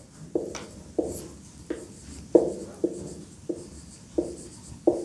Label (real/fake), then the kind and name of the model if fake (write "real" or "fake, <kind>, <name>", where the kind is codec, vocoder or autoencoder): real